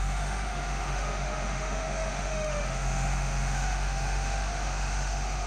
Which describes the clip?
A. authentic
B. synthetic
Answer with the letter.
B